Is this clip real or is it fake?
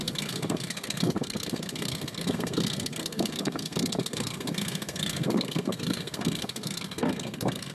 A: fake